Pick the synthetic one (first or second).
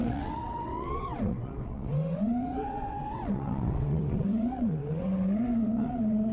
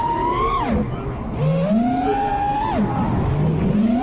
first